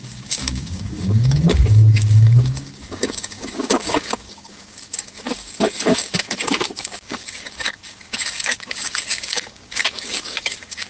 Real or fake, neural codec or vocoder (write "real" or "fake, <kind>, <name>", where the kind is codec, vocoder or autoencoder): fake, codec, DAC